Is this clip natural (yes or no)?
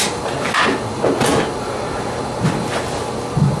yes